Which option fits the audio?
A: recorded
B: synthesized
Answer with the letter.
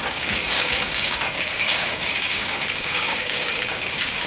B